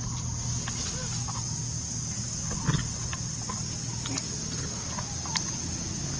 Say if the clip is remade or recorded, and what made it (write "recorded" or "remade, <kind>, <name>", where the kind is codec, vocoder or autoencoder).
recorded